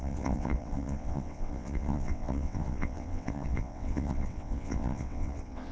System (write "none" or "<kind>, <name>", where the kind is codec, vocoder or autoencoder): vocoder, WaveNeXt